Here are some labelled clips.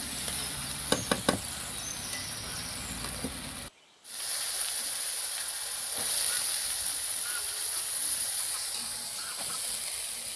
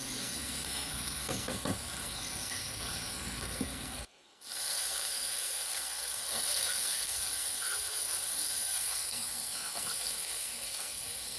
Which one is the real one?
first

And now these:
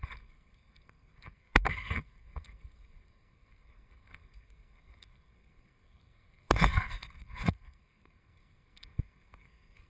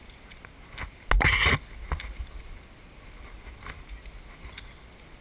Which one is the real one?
second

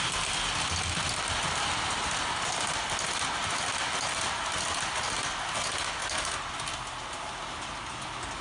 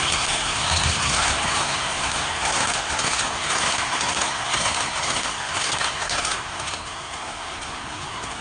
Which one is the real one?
first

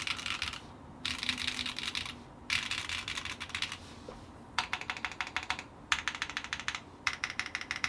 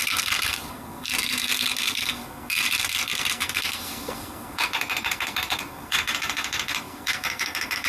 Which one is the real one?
first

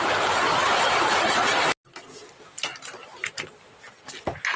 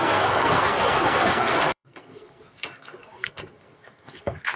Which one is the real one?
first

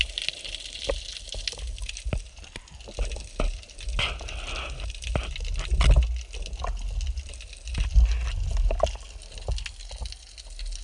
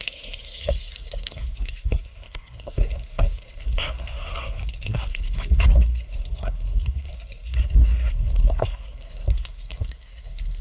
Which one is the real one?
first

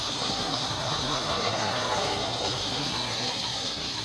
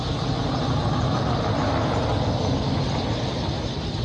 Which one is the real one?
second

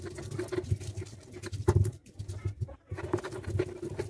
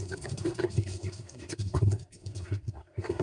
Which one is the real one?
first